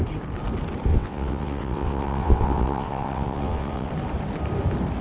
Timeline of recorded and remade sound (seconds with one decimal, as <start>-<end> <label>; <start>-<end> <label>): 0.0-0.9 recorded; 0.9-3.9 remade; 3.9-5.0 recorded